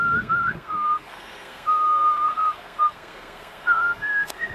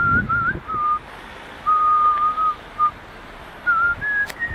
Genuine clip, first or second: second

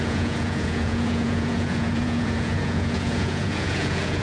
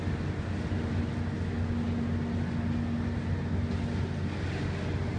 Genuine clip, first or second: second